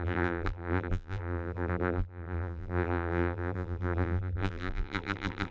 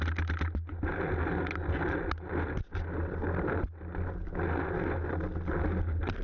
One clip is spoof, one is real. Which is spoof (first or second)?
first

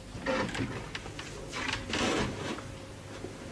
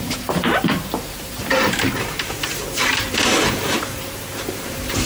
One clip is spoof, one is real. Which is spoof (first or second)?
second